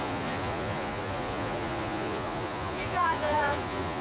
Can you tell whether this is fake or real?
fake